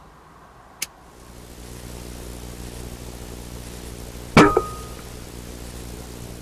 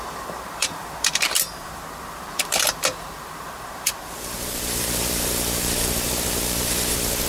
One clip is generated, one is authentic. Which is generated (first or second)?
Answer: second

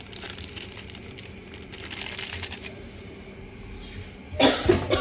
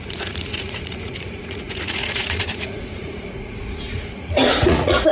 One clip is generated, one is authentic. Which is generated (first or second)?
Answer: second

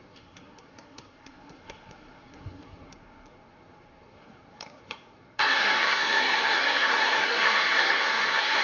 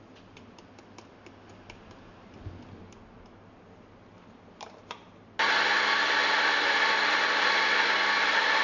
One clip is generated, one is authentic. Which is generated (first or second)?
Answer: first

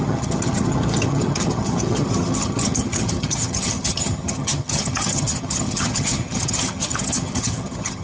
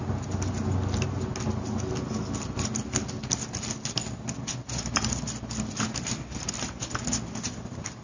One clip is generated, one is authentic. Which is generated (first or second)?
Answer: first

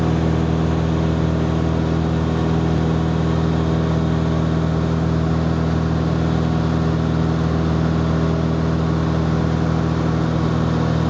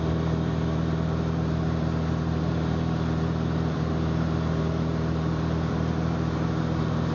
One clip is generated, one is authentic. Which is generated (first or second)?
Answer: second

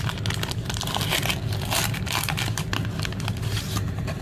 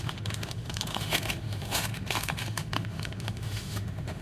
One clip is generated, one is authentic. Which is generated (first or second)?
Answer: second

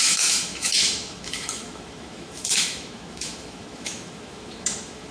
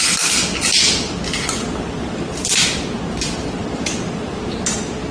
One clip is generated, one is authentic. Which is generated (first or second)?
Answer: first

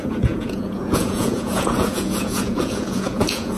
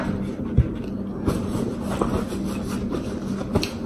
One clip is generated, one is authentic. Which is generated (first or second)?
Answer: first